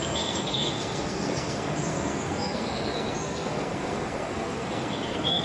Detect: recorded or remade remade